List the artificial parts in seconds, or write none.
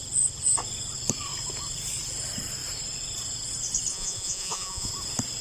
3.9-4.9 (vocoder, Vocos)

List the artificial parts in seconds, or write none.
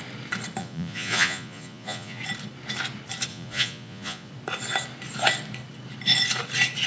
0.6-2.2 (vocoder, Vocos); 3.3-4.3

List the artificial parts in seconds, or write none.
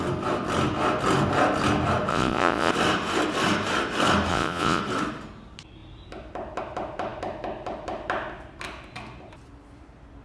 2.1-2.7 (vocoder, Vocos); 4.3-4.8